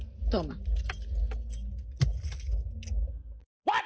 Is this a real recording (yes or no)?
yes